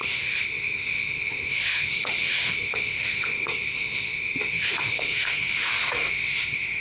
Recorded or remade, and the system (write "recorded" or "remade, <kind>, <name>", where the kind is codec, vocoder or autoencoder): remade, autoencoder, DAC-VAE